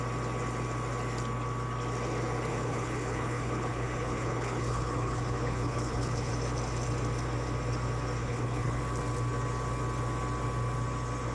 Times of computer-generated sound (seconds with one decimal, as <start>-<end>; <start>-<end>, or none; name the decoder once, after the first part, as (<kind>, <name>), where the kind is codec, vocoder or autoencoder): 2.5-6.3 (codec, HILCodec); 8.2-8.8